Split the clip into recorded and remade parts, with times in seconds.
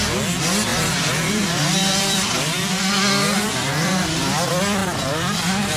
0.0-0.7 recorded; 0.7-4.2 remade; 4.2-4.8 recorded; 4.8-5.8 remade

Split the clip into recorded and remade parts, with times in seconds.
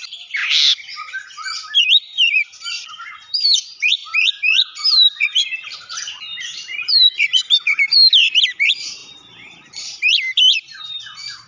0.0-0.4 remade; 0.4-1.8 recorded; 1.8-11.5 remade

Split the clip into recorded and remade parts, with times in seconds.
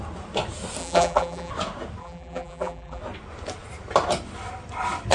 0.0-0.8 recorded; 0.8-1.5 remade; 1.5-2.0 recorded; 2.0-3.0 remade; 3.0-5.1 recorded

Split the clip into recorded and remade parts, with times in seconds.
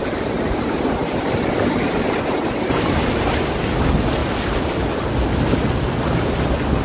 0.0-3.3 remade; 3.3-6.8 recorded